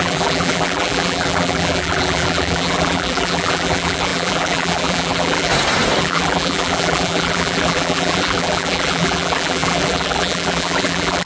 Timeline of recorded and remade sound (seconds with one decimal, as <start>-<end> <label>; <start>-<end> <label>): 0.0-5.5 remade; 5.5-6.0 recorded; 6.0-11.3 remade